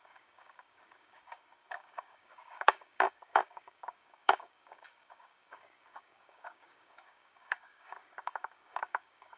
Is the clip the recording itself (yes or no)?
no